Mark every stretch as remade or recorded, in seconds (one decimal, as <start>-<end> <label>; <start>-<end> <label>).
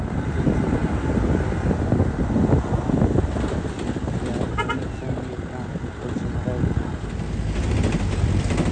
0.0-8.7 recorded